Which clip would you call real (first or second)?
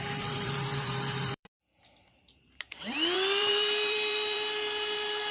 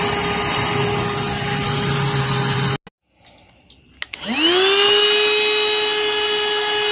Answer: second